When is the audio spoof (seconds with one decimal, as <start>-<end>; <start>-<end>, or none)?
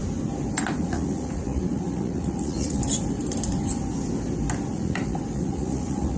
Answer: 0.8-2.8; 4.7-6.2